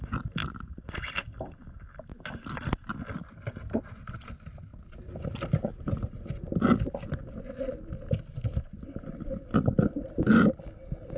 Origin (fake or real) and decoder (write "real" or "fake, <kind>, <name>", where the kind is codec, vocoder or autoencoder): real